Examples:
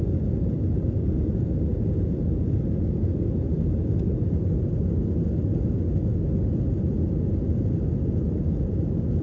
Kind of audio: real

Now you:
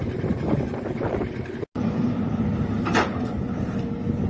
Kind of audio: real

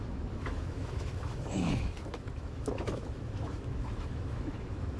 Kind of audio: fake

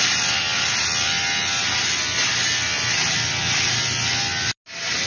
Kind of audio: real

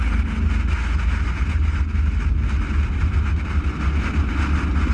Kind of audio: real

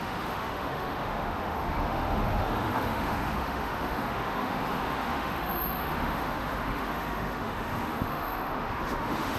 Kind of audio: fake